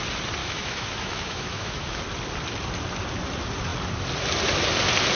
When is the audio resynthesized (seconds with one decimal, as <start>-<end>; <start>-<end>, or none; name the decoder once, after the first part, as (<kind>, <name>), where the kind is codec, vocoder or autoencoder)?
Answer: 0.4-2.0 (autoencoder, DAC-VAE)